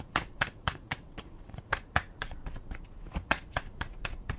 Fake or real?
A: fake